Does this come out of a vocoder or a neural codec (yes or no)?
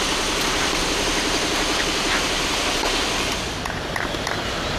no